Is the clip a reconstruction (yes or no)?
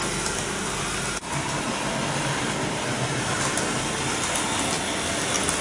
no